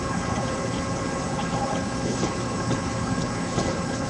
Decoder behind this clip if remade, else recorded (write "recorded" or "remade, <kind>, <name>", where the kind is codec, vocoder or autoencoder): remade, codec, HILCodec